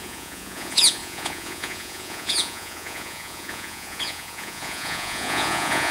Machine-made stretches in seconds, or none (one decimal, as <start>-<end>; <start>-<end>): 0.0-5.9